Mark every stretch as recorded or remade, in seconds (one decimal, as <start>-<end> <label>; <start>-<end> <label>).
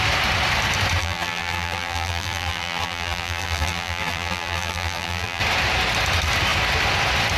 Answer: 0.0-1.0 recorded; 1.0-5.4 remade; 5.4-7.4 recorded